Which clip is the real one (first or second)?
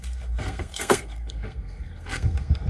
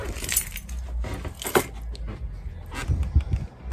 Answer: second